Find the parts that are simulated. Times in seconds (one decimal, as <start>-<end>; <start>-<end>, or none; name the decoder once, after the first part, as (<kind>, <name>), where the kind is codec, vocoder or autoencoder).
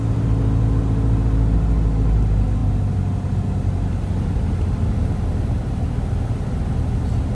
none